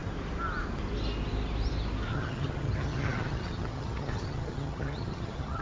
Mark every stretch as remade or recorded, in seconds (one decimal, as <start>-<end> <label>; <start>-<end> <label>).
0.0-2.1 recorded; 2.1-5.6 remade

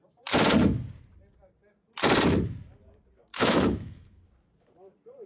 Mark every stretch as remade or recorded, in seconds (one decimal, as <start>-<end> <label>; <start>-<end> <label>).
0.0-3.3 recorded; 3.3-4.3 remade; 4.3-5.3 recorded

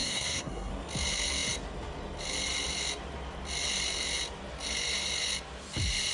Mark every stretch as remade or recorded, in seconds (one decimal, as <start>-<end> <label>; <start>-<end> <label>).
0.0-0.7 remade; 0.7-6.1 recorded

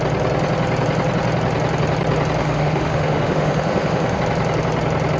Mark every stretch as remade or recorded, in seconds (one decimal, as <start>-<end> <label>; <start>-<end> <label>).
0.0-2.4 recorded; 2.4-4.2 remade; 4.2-5.2 recorded